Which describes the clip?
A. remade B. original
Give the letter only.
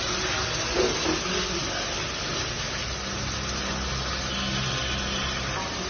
B